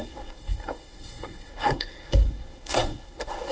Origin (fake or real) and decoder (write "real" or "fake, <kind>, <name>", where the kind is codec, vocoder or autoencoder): fake, codec, SNAC